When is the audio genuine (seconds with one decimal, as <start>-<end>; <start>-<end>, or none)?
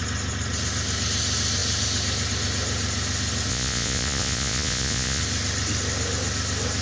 0.0-3.5; 5.2-6.8